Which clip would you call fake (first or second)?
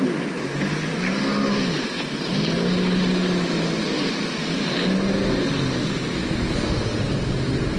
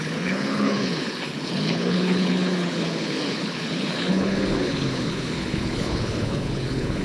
second